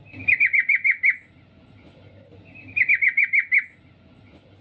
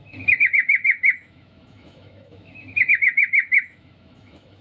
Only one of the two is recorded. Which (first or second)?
first